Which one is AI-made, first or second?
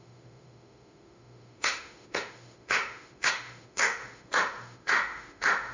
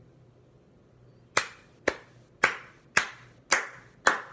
first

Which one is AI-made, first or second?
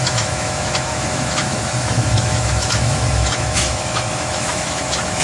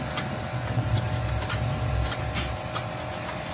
first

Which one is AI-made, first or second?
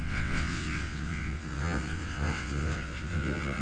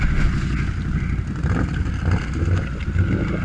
first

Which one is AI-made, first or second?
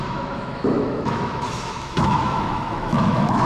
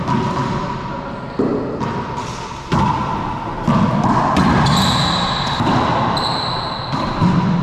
first